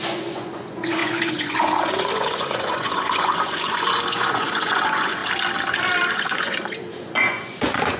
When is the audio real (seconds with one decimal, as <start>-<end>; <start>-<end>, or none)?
5.2-6.1